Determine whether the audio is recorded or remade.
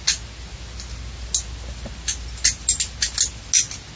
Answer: recorded